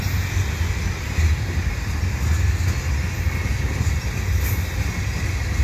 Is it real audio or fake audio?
real